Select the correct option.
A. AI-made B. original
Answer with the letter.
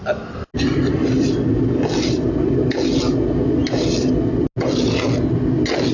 B